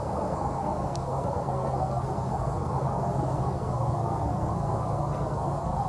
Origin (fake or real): fake